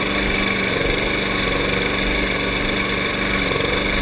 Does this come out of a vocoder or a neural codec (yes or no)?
no